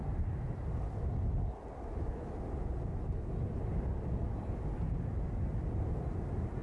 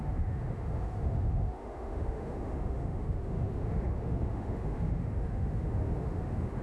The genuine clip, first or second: first